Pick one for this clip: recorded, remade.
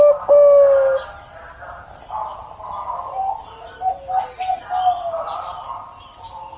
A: recorded